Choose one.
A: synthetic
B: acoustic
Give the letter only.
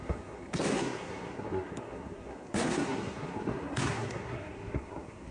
A